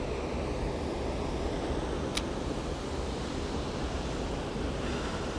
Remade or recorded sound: recorded